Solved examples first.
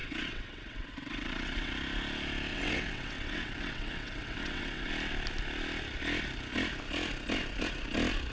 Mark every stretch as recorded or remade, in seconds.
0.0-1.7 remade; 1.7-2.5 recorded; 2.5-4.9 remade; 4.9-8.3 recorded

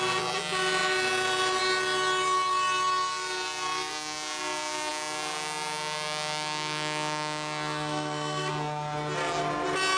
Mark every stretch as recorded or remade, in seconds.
0.0-10.0 recorded

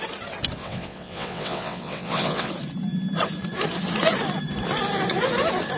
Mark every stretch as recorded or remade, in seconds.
0.0-0.6 recorded; 0.6-2.5 remade; 2.5-5.8 recorded

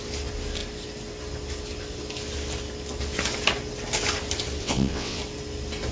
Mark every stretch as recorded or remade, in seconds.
0.0-4.6 recorded; 4.6-5.2 remade; 5.2-5.9 recorded

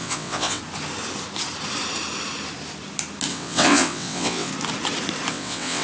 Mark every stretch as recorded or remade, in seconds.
0.0-0.6 remade; 0.6-3.3 recorded; 3.3-4.5 remade; 4.5-5.3 recorded; 5.3-5.8 remade

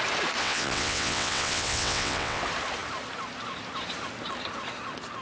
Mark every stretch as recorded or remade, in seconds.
0.0-0.4 recorded; 0.4-2.4 remade; 2.4-5.2 recorded

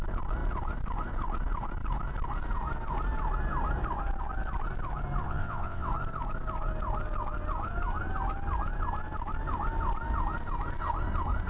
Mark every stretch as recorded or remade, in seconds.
0.0-5.2 recorded; 5.2-5.9 remade; 5.9-11.5 recorded